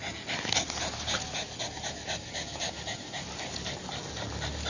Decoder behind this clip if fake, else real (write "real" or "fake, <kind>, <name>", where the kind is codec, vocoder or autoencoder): real